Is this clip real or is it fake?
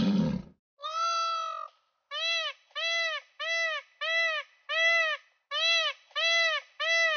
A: real